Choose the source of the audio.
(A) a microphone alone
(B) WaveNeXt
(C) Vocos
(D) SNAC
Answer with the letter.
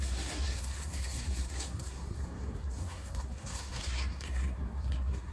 D